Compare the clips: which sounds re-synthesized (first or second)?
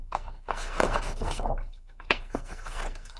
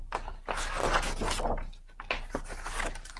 first